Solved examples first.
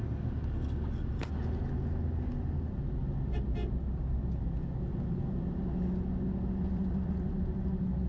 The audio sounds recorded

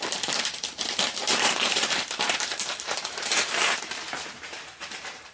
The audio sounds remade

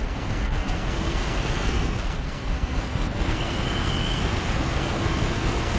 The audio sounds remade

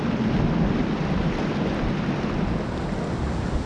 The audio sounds recorded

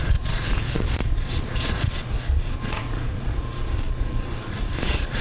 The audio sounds remade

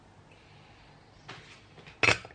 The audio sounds recorded